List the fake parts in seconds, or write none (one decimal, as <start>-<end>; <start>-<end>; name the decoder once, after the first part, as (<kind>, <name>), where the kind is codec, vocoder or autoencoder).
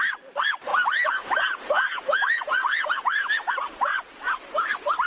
0.7-3.5 (vocoder, Vocos)